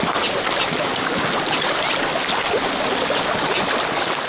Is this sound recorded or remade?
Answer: recorded